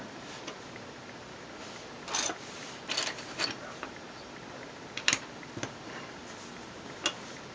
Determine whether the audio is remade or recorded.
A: recorded